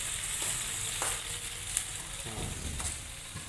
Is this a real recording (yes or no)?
yes